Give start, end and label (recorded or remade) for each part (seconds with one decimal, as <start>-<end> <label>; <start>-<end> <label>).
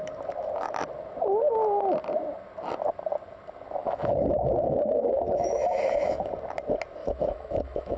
0.0-3.8 recorded; 3.8-6.3 remade; 6.3-7.0 recorded; 7.0-8.0 remade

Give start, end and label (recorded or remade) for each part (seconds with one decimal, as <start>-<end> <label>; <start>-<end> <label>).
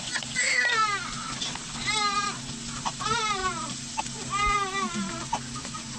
0.0-3.4 recorded; 3.4-4.0 remade; 4.0-6.0 recorded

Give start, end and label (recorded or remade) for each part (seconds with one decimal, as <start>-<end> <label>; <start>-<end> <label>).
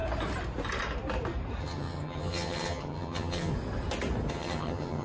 0.0-1.6 recorded; 1.6-3.5 remade; 3.5-4.3 recorded; 4.3-5.0 remade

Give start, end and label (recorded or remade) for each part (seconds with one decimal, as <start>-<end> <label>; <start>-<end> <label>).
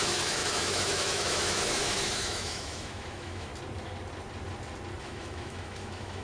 0.0-3.5 remade; 3.5-5.0 recorded; 5.0-6.2 remade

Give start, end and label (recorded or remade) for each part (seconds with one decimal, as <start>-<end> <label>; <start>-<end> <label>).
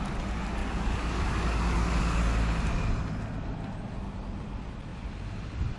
0.0-0.6 recorded; 0.6-2.0 remade; 2.0-5.8 recorded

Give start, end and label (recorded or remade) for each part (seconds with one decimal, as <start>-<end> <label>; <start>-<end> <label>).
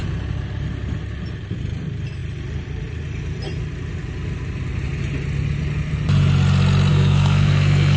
0.0-6.9 recorded; 6.9-8.0 remade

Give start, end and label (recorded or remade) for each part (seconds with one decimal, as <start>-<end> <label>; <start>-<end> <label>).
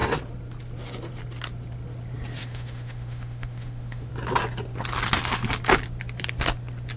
0.0-2.4 recorded; 2.4-4.1 remade; 4.1-7.0 recorded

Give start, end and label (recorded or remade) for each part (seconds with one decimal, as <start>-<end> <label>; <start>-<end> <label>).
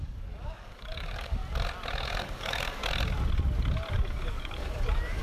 0.0-1.4 remade; 1.4-2.2 recorded; 2.2-2.8 remade; 2.8-3.9 recorded; 3.9-5.2 remade